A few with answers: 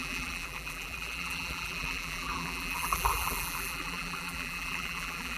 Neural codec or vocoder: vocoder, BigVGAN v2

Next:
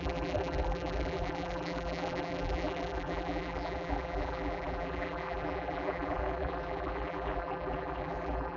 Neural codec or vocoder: vocoder, BigVGAN v2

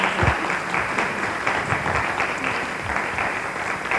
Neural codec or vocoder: vocoder, BigVGAN v2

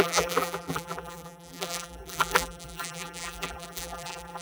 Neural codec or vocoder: vocoder, BigVGAN v2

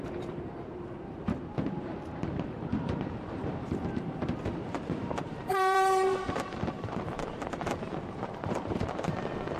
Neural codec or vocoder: vocoder, BigVGAN v2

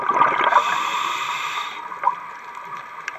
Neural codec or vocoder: vocoder, BigVGAN v2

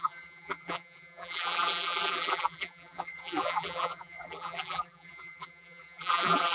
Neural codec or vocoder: vocoder, BigVGAN v2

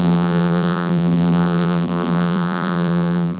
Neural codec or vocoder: vocoder, BigVGAN v2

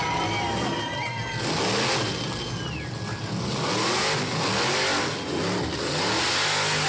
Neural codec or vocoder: none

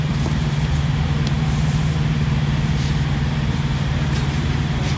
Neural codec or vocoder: vocoder, BigVGAN v2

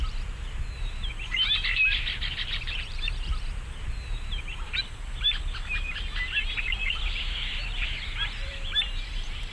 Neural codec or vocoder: vocoder, BigVGAN v2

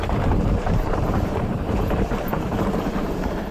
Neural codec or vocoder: vocoder, BigVGAN v2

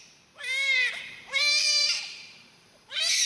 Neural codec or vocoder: vocoder, BigVGAN v2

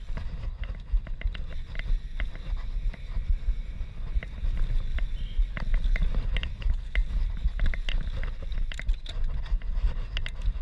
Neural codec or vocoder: none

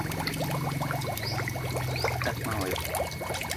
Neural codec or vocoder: none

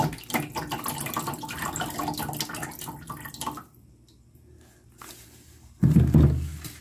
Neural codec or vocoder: none